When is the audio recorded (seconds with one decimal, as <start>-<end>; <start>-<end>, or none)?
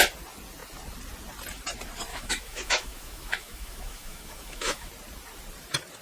0.0-2.1; 4.9-6.0